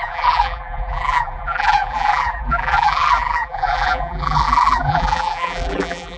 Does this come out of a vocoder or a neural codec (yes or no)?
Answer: yes